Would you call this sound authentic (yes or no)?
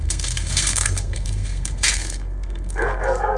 no